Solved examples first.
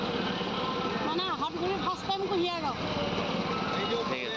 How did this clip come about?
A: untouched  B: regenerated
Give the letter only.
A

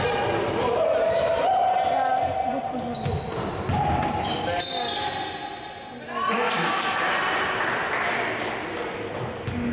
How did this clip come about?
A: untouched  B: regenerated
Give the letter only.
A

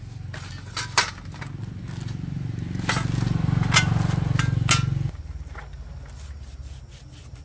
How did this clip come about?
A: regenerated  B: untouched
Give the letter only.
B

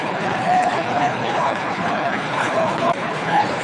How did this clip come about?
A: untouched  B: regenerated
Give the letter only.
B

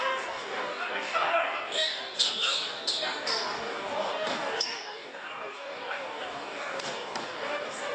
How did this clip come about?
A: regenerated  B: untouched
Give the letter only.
A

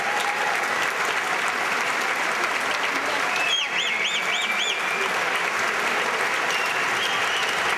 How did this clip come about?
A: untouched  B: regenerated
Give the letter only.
A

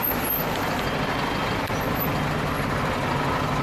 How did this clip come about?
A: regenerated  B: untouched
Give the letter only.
A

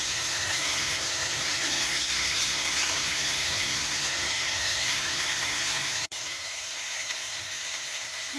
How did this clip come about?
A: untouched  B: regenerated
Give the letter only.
B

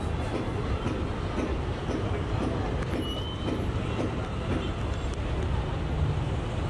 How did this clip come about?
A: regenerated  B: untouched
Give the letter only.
B